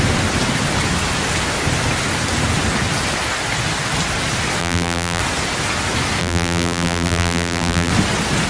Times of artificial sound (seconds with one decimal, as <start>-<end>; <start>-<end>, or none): 4.6-5.2; 6.2-7.9